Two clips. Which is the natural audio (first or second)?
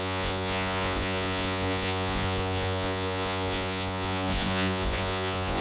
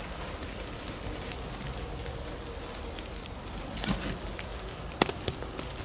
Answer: second